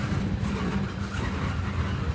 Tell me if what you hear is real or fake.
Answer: real